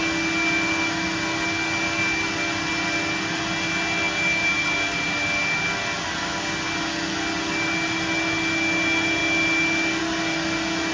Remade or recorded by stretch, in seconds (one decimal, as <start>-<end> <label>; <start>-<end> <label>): 0.0-10.9 recorded